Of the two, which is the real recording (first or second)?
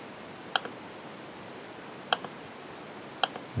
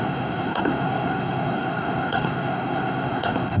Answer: first